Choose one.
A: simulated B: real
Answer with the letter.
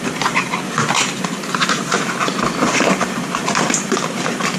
A